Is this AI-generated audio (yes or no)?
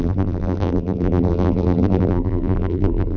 yes